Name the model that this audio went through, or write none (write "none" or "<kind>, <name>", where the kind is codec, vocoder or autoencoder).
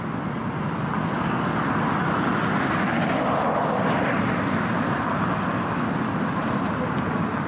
none